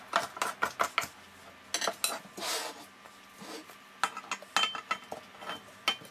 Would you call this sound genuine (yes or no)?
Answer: yes